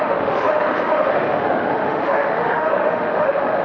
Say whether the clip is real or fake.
fake